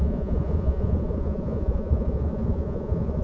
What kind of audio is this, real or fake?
fake